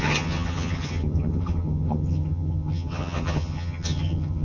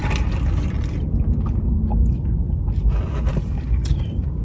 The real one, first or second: second